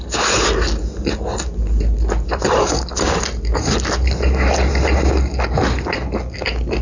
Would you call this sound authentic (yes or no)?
yes